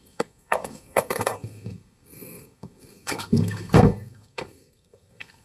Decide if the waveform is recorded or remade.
remade